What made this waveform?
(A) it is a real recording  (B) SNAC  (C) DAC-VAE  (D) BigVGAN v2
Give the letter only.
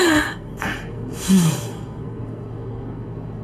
B